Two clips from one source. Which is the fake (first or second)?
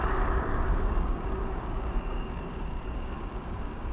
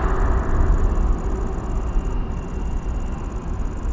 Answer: first